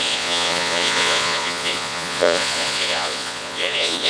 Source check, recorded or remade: remade